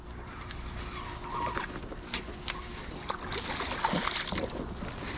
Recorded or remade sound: recorded